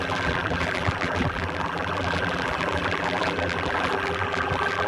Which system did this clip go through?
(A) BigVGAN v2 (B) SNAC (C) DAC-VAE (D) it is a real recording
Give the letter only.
A